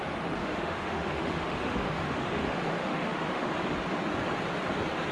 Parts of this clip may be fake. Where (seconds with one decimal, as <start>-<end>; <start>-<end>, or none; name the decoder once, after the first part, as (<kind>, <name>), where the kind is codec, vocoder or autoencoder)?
0.4-3.5 (autoencoder, DAC-VAE)

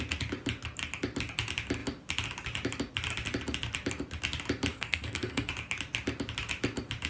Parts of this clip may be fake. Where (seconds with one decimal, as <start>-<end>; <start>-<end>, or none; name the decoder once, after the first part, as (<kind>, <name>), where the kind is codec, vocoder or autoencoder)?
4.7-5.5 (codec, SNAC)

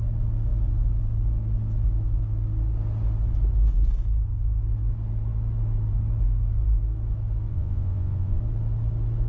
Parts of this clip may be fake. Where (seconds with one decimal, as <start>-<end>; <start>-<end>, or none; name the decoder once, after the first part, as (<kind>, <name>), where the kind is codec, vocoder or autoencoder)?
7.5-8.4 (vocoder, Vocos)

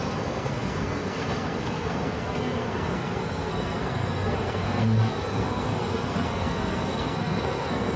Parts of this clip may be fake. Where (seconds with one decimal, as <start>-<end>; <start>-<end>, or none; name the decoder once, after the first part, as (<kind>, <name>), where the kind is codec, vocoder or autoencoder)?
0.0-8.0 (codec, SNAC)